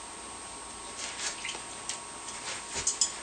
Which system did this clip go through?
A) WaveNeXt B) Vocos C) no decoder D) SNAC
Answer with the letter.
C